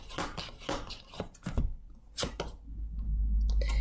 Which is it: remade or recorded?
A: recorded